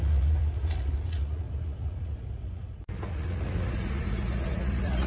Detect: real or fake fake